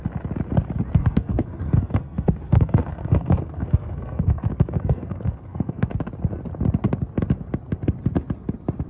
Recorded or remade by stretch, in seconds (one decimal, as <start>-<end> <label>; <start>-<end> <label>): 0.0-1.0 recorded; 1.0-5.9 remade; 5.9-8.9 recorded